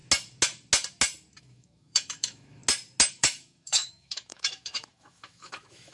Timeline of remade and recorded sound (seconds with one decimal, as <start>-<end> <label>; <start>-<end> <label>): 0.0-1.4 recorded; 1.4-2.6 remade; 2.6-3.1 recorded; 3.1-5.9 remade